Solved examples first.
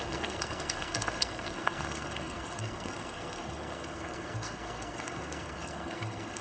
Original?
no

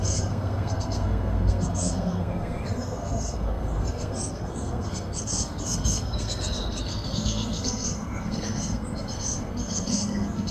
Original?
no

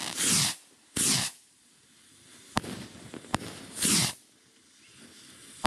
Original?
yes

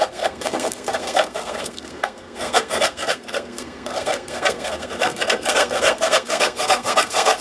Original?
no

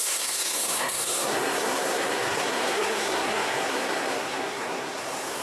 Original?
no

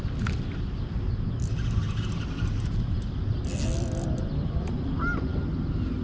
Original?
yes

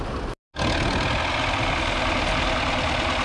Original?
yes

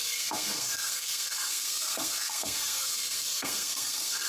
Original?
no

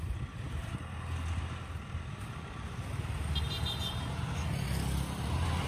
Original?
yes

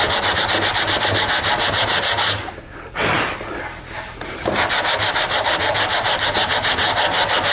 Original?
yes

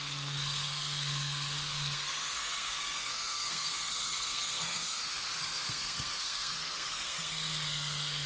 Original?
no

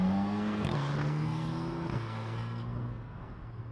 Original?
no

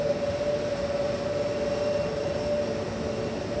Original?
yes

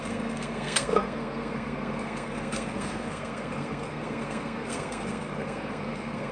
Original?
no